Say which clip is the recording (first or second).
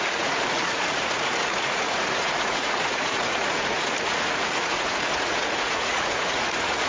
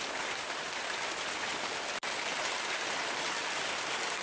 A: second